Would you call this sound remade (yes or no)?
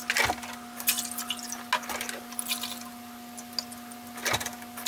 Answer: no